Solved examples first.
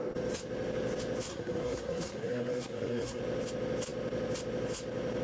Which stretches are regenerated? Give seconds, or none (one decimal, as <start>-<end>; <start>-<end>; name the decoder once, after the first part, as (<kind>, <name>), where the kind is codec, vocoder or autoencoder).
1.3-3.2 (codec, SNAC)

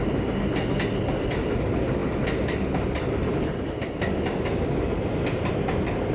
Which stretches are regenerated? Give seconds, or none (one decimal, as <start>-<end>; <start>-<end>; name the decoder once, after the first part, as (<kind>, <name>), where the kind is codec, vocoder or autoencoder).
none

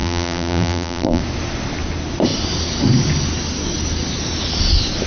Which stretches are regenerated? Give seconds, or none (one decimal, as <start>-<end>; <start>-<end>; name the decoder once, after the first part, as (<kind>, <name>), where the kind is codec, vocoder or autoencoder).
0.0-1.2 (vocoder, BigVGAN v2)

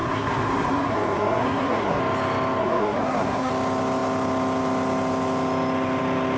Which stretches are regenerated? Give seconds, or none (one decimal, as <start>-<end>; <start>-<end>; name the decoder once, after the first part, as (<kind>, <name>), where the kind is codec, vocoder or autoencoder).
0.0-2.0 (codec, SNAC); 2.6-3.5

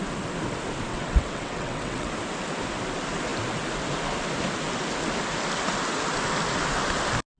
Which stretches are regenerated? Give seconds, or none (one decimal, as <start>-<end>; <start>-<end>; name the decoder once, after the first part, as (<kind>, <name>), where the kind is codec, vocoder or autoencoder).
0.9-2.1 (vocoder, WaveNeXt)

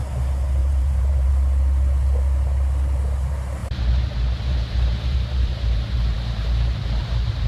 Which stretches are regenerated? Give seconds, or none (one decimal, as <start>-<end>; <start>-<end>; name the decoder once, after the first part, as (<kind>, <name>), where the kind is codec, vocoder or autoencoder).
0.6-1.3 (vocoder, BigVGAN v2); 3.6-7.5

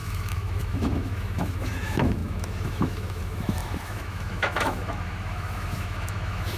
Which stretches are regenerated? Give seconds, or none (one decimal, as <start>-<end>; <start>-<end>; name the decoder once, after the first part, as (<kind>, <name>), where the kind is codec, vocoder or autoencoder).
0.0-6.6 (autoencoder, DAC-VAE)

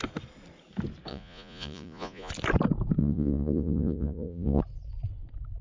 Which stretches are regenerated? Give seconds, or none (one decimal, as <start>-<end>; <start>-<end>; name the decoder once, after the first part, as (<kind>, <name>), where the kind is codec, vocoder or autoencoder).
1.1-2.3 (vocoder, Vocos); 3.0-4.6